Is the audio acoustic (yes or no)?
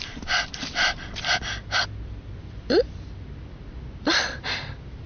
no